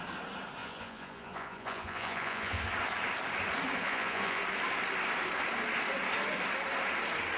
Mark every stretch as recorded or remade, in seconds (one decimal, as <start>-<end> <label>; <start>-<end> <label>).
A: 0.0-0.6 recorded; 0.6-2.6 remade; 2.6-3.8 recorded; 3.8-4.4 remade; 4.4-7.4 recorded